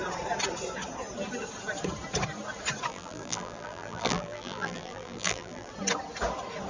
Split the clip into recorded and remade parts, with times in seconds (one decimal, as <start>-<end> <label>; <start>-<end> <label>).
0.0-2.9 recorded; 2.9-5.7 remade; 5.7-6.7 recorded